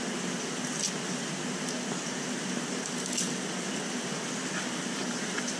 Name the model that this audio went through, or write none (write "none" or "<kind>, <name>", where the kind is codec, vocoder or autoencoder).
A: none